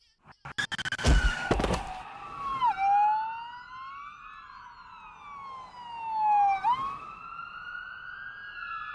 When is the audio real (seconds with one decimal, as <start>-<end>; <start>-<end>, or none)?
0.0-8.9